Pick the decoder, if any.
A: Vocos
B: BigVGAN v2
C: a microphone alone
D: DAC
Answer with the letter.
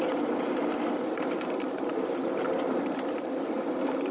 B